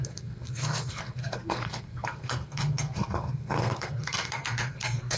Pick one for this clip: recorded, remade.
remade